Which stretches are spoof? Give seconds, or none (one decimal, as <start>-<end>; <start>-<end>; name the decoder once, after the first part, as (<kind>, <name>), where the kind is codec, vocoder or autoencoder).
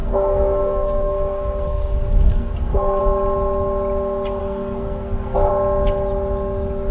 0.0-3.0 (codec, SNAC); 4.4-5.5